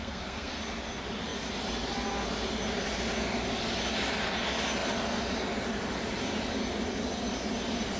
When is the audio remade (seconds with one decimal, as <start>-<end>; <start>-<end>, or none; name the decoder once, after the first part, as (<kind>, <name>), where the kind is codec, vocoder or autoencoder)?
0.0-0.5 (codec, SNAC)